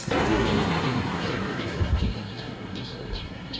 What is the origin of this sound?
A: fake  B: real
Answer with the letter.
A